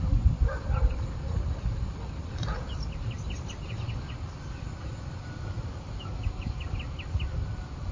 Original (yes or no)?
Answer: yes